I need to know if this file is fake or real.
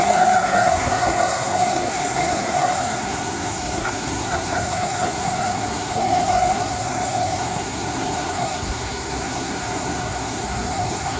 fake